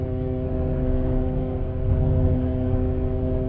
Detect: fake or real fake